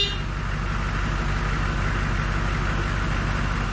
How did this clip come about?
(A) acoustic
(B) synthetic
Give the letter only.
A